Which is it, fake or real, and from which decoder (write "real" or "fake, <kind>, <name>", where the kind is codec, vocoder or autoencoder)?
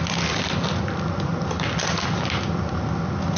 real